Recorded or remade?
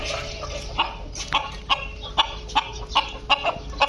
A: recorded